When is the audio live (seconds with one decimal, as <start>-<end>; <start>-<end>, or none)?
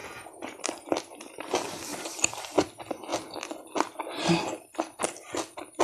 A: 0.6-5.8